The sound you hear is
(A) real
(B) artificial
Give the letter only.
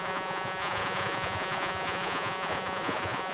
B